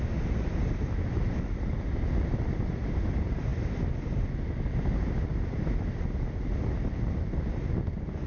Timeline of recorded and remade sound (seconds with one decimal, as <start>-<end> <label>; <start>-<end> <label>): 0.0-8.3 recorded